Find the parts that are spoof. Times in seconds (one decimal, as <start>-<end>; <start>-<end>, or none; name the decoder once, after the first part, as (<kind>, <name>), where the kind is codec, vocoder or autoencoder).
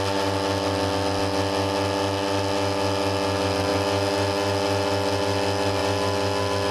none